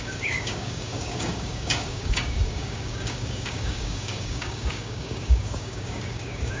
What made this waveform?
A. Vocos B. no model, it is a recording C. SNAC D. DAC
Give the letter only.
D